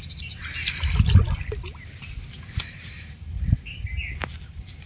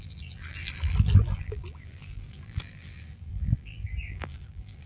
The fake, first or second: second